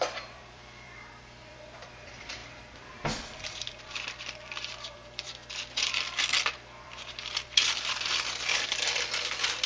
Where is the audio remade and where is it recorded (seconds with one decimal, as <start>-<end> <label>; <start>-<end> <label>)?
0.0-2.4 remade; 2.4-3.2 recorded; 3.2-5.4 remade; 5.4-6.4 recorded; 6.4-9.7 remade